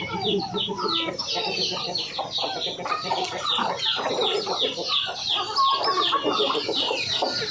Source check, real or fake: real